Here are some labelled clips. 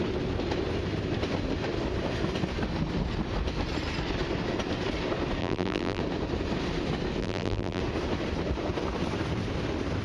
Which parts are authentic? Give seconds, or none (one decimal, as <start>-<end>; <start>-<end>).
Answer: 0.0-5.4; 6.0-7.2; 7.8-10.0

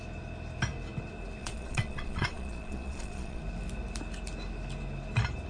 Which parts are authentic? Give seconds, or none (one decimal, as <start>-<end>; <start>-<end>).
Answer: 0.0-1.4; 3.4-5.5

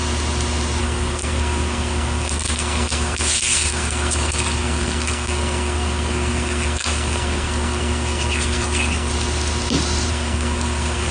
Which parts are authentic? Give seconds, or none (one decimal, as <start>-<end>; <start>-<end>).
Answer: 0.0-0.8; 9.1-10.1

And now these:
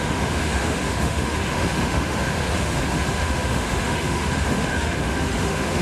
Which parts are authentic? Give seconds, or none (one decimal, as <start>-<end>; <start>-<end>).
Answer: none

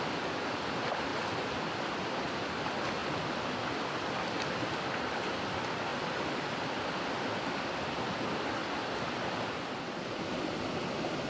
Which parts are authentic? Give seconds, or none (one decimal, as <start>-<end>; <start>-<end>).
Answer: 0.0-11.3

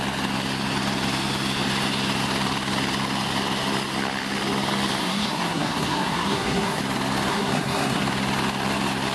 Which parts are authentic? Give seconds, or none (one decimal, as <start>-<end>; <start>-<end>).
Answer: 0.0-5.0; 6.8-7.3; 8.0-9.1